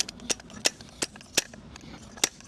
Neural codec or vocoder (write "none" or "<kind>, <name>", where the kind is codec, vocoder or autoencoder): none